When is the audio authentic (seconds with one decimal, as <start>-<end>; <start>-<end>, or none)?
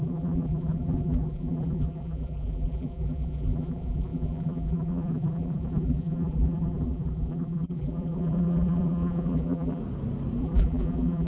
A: 9.8-10.4